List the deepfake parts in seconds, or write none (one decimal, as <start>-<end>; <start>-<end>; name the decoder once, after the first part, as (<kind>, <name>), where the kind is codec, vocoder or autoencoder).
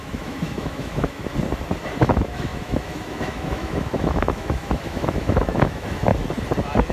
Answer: 0.0-1.3 (autoencoder, DAC-VAE); 2.0-6.1